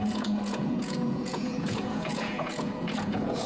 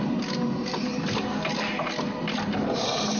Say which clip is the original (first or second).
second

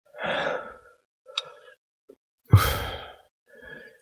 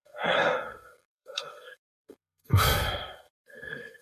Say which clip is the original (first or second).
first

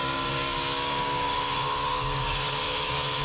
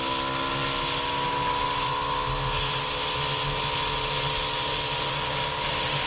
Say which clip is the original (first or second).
second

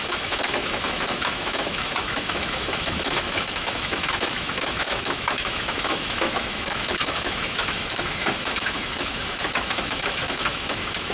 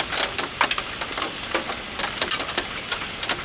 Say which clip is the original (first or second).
second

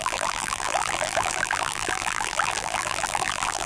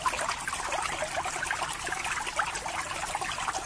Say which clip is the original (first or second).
second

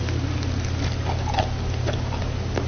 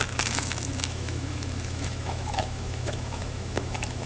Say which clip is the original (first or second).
first